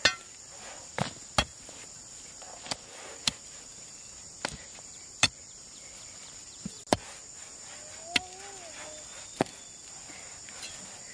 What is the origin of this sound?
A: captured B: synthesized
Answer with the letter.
A